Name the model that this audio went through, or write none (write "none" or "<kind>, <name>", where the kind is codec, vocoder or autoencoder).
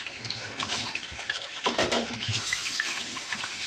autoencoder, DAC-VAE